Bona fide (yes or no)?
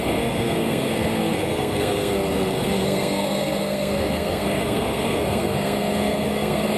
no